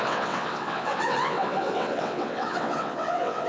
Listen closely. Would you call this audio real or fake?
fake